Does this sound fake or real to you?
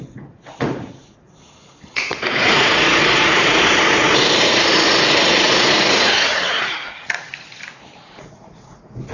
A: fake